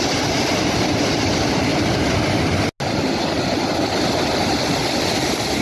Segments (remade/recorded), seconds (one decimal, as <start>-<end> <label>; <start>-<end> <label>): 0.0-5.6 recorded

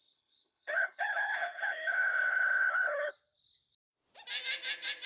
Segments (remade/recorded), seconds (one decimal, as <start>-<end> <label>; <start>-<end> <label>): 0.0-3.1 remade; 3.1-5.1 recorded

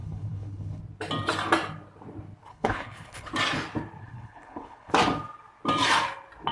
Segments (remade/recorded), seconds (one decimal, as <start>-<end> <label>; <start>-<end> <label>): 0.0-0.8 remade; 0.8-2.5 recorded; 2.5-3.3 remade; 3.3-4.0 recorded; 4.0-4.9 remade; 4.9-6.5 recorded

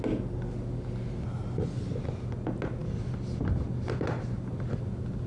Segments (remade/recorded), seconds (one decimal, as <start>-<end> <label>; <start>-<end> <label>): 0.0-5.3 recorded

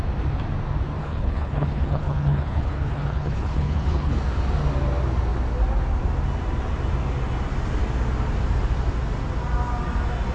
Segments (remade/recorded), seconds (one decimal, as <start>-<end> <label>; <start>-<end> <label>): 0.0-1.0 recorded; 1.0-4.2 remade; 4.2-10.3 recorded

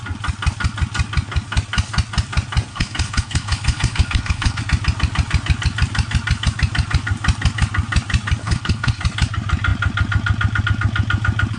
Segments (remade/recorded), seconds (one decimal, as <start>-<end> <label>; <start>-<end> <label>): 0.0-2.7 recorded; 2.7-4.6 remade; 4.6-8.4 recorded; 8.4-9.0 remade; 9.0-11.6 recorded

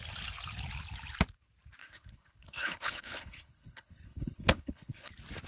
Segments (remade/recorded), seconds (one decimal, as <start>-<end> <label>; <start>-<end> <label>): 0.0-1.8 recorded; 1.8-5.1 remade; 5.1-5.5 recorded